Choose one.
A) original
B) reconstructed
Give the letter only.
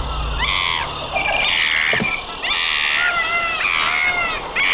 A